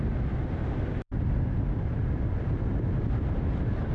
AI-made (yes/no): yes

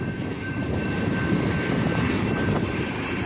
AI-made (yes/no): yes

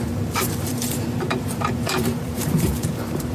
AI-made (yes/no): yes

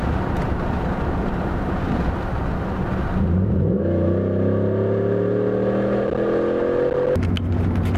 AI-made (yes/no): no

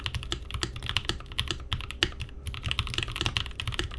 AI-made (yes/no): no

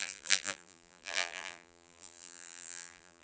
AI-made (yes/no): yes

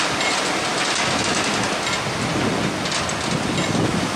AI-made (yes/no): no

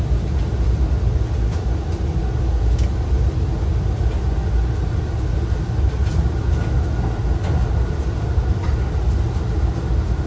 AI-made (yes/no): no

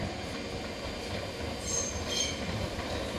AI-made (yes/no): no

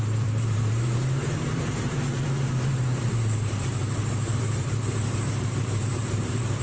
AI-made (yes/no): yes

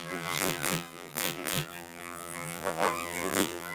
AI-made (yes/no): yes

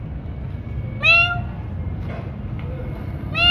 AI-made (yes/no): no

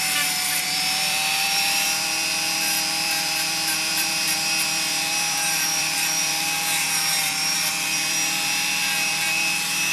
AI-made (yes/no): yes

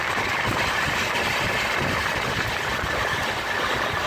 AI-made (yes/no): no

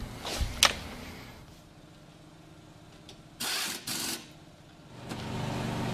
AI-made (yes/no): no